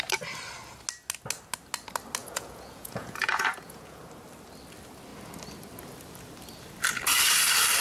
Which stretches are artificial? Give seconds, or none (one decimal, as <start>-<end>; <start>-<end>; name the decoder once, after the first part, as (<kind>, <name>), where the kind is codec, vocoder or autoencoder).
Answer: 2.2-4.0 (vocoder, Vocos)